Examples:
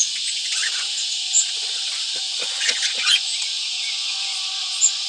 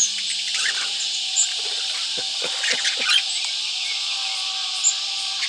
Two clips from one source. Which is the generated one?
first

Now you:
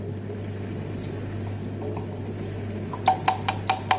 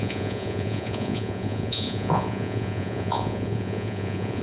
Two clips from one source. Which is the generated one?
second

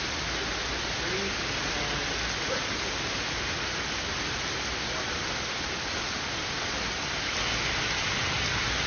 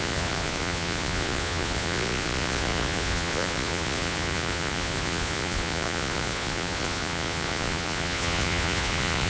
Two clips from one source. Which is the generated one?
second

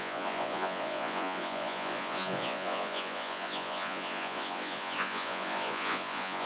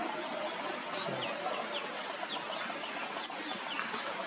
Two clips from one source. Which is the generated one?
first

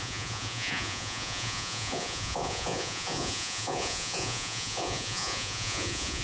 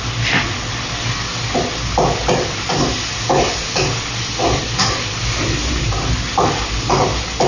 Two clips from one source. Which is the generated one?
first